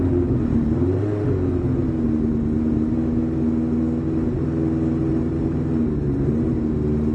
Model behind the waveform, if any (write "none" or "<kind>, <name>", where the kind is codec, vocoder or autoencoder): none